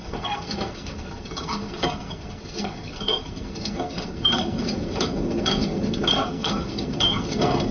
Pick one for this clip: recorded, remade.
remade